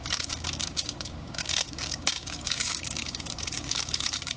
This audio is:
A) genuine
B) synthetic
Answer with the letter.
B